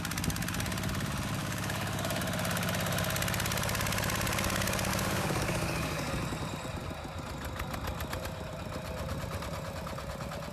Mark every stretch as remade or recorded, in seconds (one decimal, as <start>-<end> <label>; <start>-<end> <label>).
0.0-1.4 recorded; 1.4-2.2 remade; 2.2-4.9 recorded; 4.9-6.1 remade; 6.1-10.5 recorded